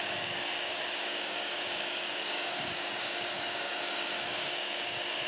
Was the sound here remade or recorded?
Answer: remade